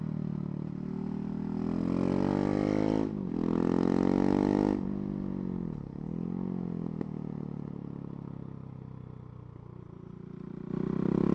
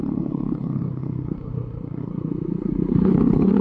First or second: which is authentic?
first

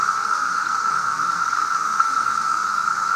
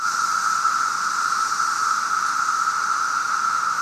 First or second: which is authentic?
second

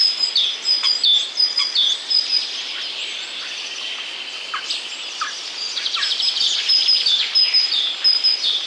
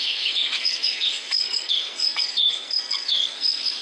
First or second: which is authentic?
first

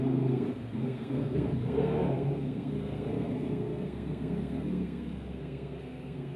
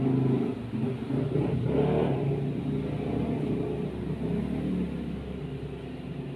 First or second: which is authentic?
second